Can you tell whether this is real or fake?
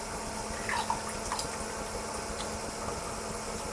real